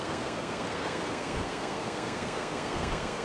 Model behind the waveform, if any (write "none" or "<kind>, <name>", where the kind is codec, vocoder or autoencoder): codec, SNAC